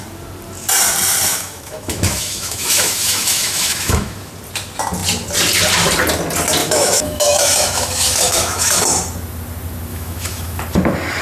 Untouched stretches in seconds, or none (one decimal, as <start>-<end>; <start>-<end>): 0.0-1.3; 4.3-6.6; 8.8-9.9; 10.6-11.2